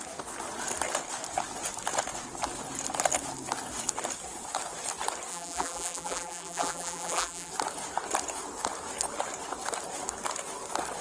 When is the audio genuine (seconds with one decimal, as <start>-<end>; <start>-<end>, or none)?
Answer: 0.0-5.3; 7.5-11.0